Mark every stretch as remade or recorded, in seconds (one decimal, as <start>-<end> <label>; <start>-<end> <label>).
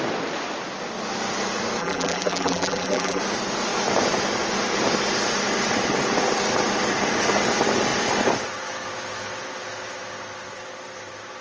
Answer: 0.0-1.8 recorded; 1.8-3.2 remade; 3.2-11.4 recorded